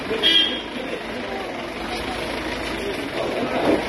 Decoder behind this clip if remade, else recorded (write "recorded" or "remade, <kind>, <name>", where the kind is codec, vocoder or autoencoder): recorded